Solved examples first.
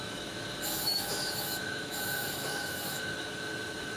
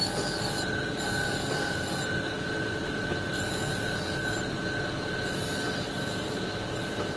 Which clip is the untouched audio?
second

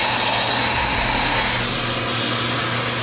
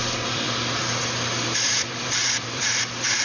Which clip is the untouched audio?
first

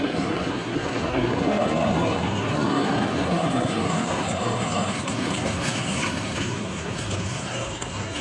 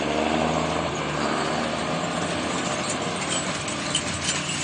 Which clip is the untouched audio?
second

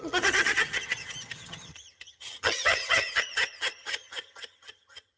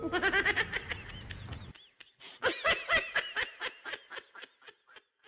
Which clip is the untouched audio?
second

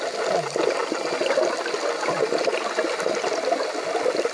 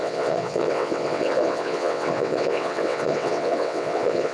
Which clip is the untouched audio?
first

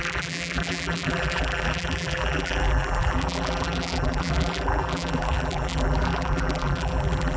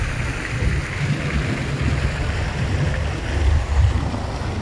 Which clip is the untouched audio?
second